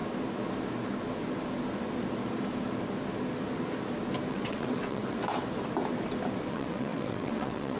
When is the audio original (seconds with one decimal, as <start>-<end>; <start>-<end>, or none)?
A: 0.0-4.3; 5.2-6.5